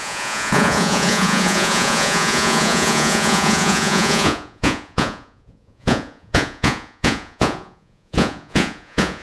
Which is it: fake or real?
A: fake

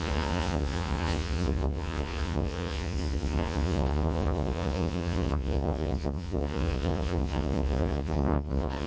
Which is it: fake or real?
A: fake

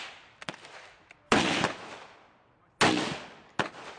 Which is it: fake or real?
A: real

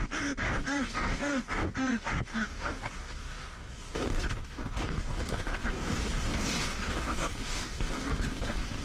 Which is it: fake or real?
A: fake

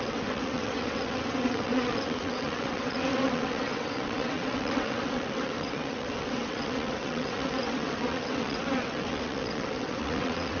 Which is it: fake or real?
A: fake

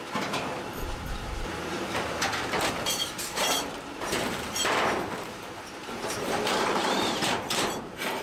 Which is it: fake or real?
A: fake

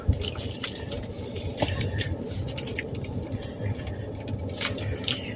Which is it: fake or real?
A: real